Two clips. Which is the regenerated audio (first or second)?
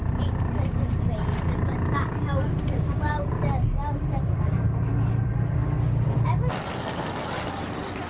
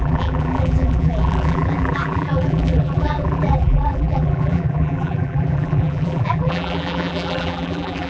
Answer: second